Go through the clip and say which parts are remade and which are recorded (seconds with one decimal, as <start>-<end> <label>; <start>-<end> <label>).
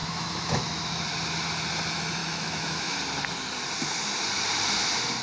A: 0.0-0.6 remade; 0.6-2.2 recorded; 2.2-3.0 remade; 3.0-5.2 recorded